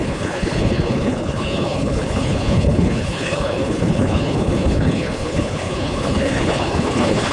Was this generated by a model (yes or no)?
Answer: yes